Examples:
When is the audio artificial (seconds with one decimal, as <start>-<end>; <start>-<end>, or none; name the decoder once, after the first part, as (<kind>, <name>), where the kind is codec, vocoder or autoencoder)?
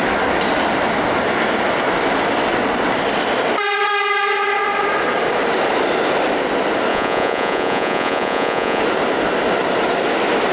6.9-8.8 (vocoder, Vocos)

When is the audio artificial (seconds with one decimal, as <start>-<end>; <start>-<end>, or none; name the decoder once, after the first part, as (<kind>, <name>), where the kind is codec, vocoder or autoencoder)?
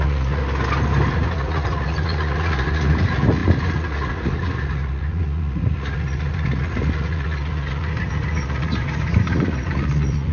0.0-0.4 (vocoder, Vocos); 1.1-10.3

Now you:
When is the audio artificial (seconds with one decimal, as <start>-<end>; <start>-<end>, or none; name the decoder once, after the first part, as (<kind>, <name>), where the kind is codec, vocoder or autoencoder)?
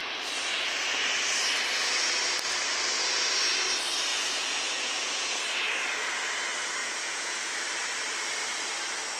4.1-5.4 (vocoder, Vocos); 6.8-7.5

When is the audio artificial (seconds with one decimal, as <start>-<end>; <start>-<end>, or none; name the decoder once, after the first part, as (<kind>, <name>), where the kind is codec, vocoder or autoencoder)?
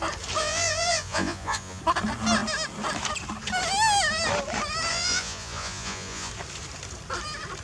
0.4-1.8 (vocoder, Vocos); 4.9-6.3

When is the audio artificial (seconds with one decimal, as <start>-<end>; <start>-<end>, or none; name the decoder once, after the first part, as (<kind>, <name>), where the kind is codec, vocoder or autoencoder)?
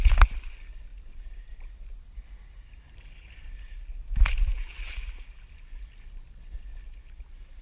none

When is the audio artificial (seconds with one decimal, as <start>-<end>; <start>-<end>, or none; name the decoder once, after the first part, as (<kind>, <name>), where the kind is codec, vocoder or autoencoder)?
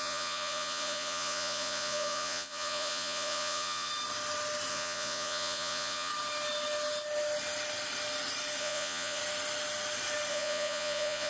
0.0-3.9 (vocoder, Vocos); 4.7-6.1; 8.6-9.2; 10.3-11.3